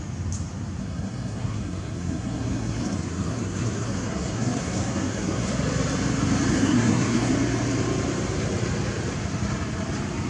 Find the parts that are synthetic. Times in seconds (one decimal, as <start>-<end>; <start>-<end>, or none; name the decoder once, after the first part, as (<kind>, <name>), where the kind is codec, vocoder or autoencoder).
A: 0.8-5.5 (codec, SNAC); 6.5-7.3